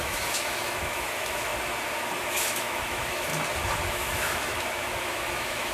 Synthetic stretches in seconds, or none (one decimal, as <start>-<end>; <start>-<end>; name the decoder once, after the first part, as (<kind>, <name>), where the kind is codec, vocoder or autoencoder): 0.0-1.5 (autoencoder, DAC-VAE); 2.2-3.3; 3.9-5.7